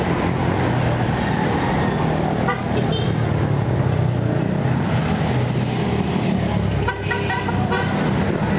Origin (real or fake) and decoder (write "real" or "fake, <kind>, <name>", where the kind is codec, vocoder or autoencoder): real